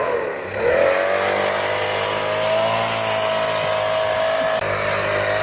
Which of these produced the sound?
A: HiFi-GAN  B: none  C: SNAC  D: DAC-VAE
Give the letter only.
B